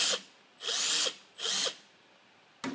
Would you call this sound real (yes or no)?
yes